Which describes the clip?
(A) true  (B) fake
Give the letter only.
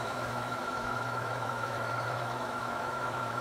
B